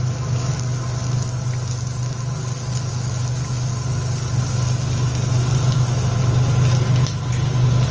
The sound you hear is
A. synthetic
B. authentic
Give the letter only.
B